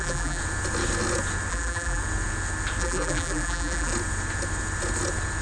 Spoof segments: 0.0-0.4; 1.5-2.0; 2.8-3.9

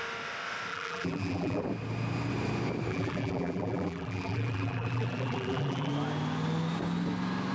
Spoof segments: 0.7-1.6; 2.9-5.9

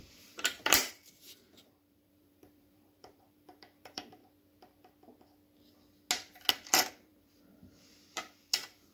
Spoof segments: 0.0-4.2; 6.5-8.9